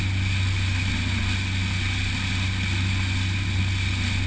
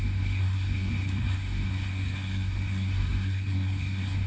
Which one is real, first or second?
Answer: first